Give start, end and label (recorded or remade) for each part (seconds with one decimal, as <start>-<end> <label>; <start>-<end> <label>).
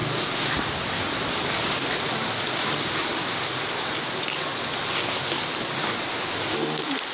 0.0-7.1 recorded